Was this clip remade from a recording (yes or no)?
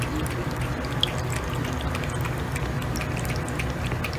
no